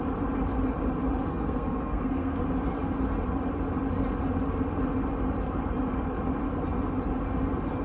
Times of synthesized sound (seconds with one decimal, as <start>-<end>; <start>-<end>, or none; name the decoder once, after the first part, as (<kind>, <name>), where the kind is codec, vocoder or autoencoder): 1.3-2.4 (codec, SNAC)